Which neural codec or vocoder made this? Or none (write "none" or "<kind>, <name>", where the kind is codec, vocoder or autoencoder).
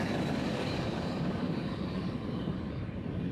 codec, DAC